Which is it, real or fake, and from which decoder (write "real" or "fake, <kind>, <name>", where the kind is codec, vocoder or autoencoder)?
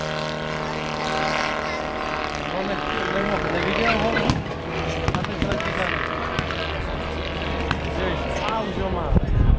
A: real